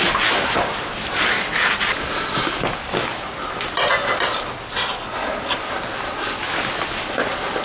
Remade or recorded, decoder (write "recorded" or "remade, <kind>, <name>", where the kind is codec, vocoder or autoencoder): recorded